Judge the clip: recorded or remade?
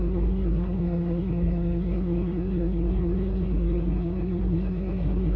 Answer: remade